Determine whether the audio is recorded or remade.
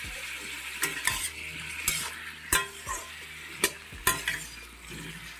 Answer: recorded